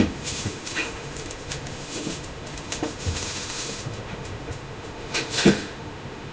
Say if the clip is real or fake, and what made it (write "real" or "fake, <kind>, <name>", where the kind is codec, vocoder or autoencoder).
fake, autoencoder, DAC-VAE